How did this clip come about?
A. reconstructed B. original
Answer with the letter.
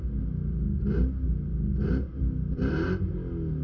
B